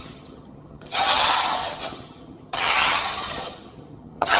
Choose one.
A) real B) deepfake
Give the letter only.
B